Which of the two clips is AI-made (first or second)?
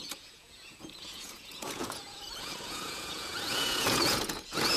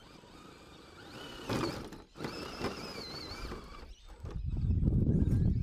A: first